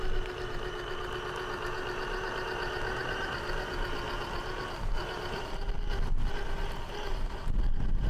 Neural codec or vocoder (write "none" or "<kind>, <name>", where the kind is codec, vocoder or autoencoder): none